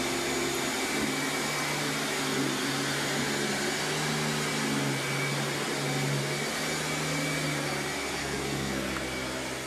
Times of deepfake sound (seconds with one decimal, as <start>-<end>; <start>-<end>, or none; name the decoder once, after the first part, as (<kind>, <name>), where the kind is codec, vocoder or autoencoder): 8.2-8.9 (codec, SNAC)